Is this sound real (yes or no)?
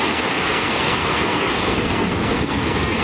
no